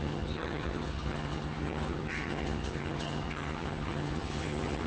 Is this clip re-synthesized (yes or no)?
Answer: yes